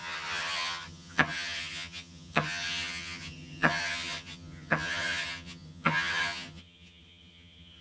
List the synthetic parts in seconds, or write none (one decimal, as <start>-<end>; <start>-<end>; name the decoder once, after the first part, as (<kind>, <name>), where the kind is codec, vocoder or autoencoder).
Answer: 0.0-7.8 (vocoder, HiFi-GAN)